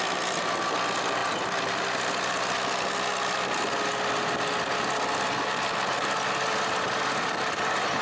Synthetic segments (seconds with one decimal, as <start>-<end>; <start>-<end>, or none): none